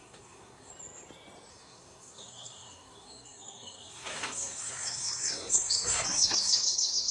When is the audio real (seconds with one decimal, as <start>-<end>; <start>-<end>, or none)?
0.7-1.5